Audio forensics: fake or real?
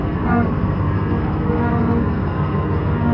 fake